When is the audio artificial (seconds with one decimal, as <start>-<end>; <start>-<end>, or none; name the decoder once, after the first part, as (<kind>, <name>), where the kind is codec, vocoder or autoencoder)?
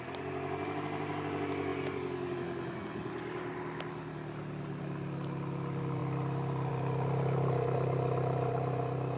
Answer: none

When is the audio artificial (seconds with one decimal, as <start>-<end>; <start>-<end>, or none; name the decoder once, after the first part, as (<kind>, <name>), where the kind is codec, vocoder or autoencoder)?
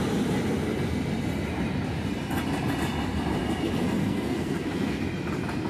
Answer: 4.0-5.0 (codec, SNAC)